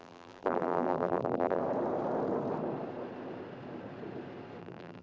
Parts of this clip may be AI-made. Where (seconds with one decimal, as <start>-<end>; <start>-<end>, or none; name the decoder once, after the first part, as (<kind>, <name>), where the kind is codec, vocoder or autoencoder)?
0.0-1.6 (vocoder, BigVGAN v2); 4.6-5.0